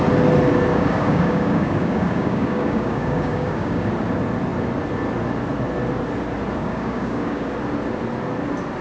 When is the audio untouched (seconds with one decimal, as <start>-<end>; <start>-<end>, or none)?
0.0-0.7; 3.9-6.6; 7.5-8.8